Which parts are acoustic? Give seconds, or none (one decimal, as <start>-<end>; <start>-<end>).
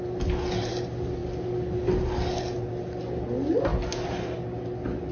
0.0-5.1